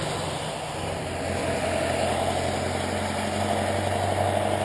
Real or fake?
real